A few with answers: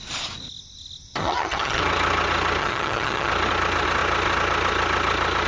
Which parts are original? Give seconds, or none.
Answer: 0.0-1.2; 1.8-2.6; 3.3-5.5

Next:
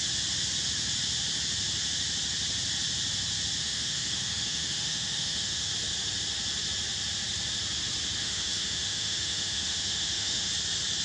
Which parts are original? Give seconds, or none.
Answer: 0.0-3.6; 5.7-8.2; 10.5-11.0

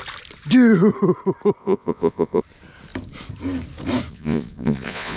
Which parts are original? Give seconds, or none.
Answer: 0.0-1.6; 2.4-4.1

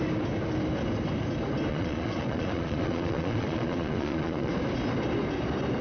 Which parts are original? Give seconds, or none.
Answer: 0.0-1.7; 4.5-5.8

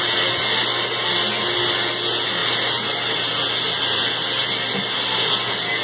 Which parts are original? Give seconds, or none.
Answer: 0.0-5.8

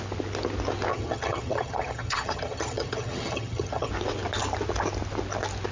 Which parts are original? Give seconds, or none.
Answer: 0.0-0.9; 3.9-5.7